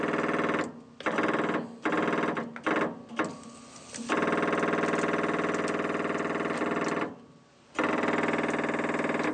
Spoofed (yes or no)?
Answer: no